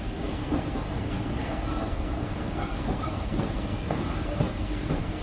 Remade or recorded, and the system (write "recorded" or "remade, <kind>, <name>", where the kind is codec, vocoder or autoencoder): remade, codec, SNAC